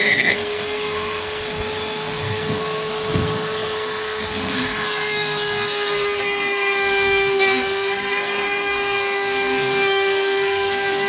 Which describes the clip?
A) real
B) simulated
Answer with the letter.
B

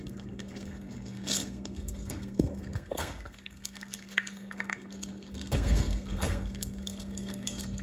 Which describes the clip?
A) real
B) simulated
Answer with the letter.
B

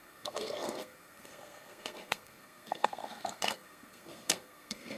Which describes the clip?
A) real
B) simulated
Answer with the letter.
B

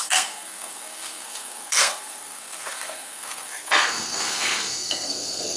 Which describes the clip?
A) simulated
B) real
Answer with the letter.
A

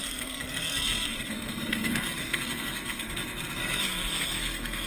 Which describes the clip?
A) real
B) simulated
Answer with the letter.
B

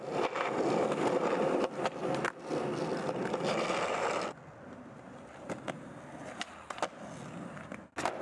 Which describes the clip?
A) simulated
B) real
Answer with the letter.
B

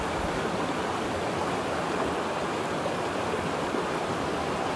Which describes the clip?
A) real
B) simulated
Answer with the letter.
A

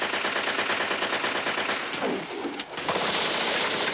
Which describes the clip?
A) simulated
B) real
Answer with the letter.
B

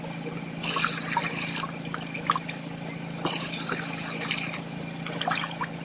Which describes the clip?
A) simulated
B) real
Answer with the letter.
B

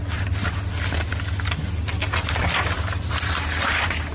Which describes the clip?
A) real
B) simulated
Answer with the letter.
A